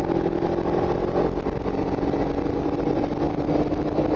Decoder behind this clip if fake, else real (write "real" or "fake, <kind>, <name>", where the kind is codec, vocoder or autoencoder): real